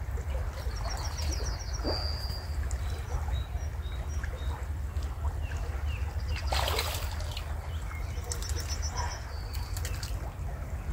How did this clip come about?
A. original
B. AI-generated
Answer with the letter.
A